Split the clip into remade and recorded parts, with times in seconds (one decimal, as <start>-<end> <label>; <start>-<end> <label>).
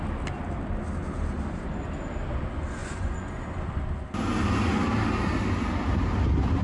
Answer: 0.0-2.8 recorded; 2.8-3.4 remade; 3.4-6.6 recorded